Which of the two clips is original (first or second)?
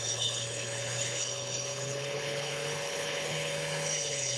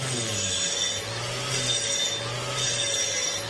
second